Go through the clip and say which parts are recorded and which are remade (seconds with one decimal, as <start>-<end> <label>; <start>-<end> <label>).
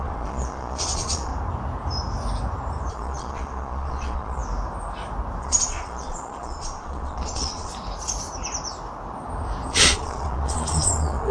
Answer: 0.0-1.3 remade; 1.3-2.9 recorded; 2.9-4.4 remade; 4.4-5.4 recorded; 5.4-7.7 remade; 7.7-9.7 recorded; 9.7-11.3 remade